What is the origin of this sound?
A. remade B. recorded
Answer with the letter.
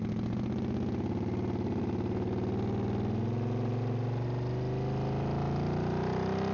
B